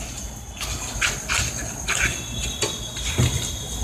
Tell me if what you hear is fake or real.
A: real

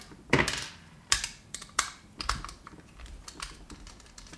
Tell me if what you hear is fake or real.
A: fake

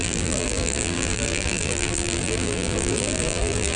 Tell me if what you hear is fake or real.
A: fake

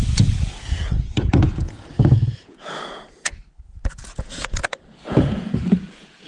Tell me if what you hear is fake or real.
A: fake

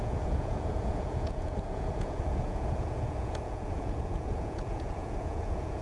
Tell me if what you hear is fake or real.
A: fake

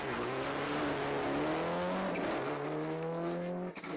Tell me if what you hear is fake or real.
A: real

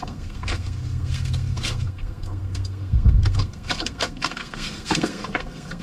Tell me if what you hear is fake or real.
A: fake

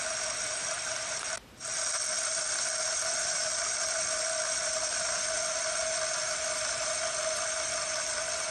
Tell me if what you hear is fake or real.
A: real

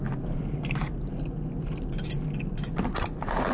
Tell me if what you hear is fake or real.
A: real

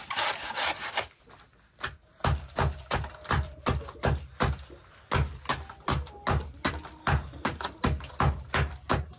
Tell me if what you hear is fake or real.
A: real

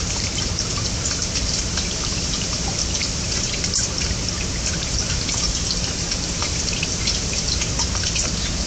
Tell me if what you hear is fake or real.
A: fake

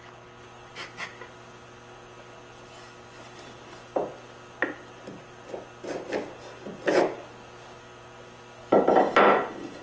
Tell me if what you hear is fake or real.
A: real